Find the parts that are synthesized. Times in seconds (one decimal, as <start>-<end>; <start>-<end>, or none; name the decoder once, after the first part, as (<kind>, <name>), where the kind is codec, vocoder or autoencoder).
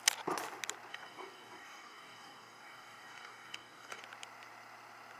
0.9-4.0 (codec, DAC)